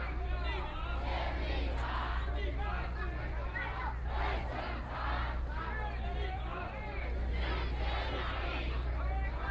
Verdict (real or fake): real